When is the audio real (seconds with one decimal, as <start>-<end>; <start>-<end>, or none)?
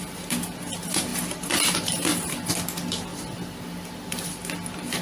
0.0-1.1; 2.5-3.1; 4.4-5.0